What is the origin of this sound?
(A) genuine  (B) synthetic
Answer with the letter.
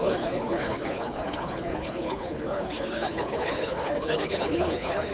B